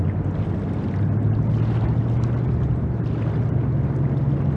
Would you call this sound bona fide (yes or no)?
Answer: yes